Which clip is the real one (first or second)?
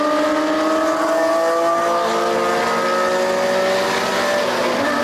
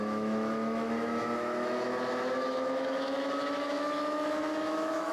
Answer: first